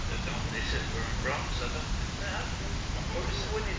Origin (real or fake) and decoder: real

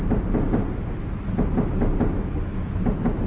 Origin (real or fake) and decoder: real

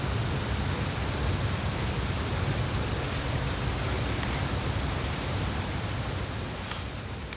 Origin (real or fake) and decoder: real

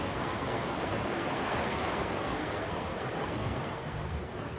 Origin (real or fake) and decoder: fake, codec, SNAC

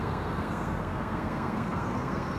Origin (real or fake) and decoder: fake, codec, SNAC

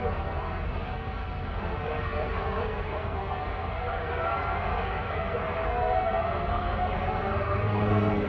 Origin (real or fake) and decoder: fake, codec, SNAC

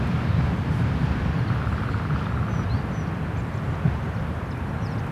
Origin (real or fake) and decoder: real